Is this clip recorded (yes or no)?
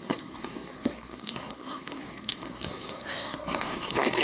no